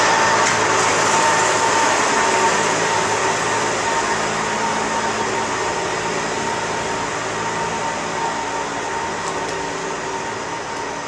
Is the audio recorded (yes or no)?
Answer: yes